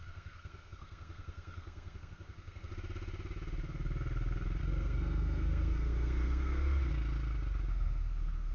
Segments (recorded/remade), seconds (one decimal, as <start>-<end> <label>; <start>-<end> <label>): 0.0-2.7 remade; 2.7-4.6 recorded; 4.6-6.9 remade; 6.9-7.7 recorded; 7.7-8.5 remade